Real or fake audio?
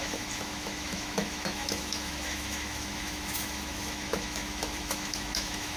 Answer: fake